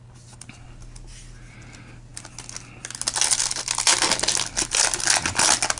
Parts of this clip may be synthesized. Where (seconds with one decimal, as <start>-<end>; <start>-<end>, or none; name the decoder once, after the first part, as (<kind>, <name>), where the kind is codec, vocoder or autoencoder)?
none